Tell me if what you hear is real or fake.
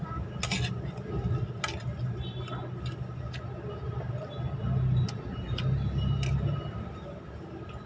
real